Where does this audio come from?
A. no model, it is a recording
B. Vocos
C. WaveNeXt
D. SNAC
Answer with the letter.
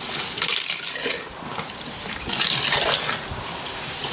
A